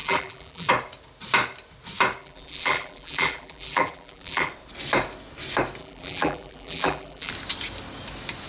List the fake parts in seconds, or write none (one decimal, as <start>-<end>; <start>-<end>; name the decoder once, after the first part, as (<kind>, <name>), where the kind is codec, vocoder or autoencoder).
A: 0.0-0.7 (vocoder, BigVGAN v2); 2.2-4.5; 5.8-7.3